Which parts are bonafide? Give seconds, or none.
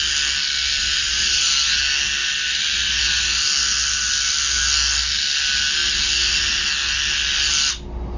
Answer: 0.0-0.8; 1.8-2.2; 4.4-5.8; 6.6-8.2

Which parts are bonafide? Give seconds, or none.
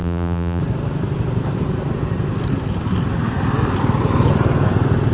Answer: 0.6-5.1